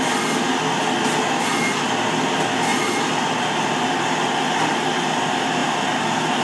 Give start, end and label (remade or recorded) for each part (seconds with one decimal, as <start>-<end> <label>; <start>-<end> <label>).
0.0-6.4 recorded